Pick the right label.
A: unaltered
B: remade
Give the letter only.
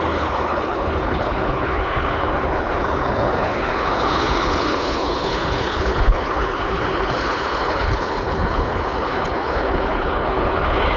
B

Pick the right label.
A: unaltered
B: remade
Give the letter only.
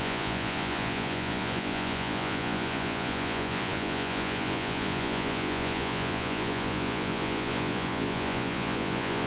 B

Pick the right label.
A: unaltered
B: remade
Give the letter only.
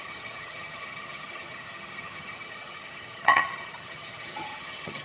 B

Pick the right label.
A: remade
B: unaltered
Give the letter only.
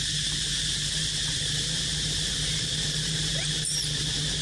A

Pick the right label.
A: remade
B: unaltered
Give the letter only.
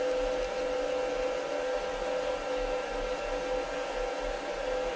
B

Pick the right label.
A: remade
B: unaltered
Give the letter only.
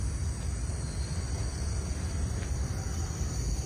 B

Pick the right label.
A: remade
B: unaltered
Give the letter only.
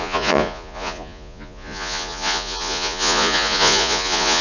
A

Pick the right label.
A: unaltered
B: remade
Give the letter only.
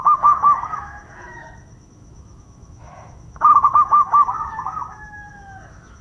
B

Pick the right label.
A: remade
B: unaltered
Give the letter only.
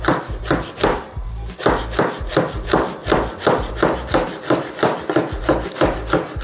B